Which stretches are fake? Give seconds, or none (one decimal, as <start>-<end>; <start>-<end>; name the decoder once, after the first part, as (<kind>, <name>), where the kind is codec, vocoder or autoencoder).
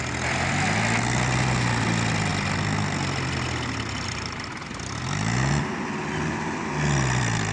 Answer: none